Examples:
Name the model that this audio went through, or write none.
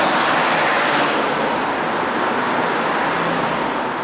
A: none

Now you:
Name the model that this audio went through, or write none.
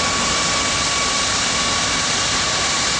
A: none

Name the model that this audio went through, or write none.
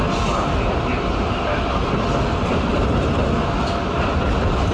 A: none